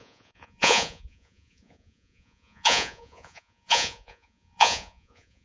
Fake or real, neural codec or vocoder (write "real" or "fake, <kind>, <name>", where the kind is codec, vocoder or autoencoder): fake, vocoder, Vocos